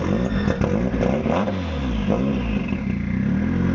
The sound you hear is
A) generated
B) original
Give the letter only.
B